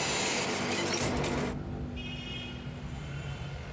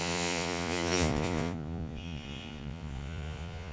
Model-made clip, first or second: second